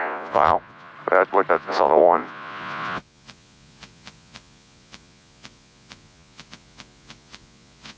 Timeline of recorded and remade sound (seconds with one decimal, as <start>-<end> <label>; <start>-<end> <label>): 0.0-0.9 remade; 0.9-1.5 recorded; 1.5-8.0 remade